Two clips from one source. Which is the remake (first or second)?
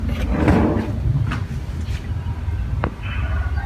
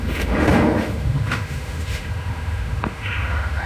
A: second